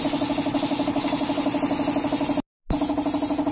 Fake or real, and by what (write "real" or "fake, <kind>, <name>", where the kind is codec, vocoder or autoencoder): real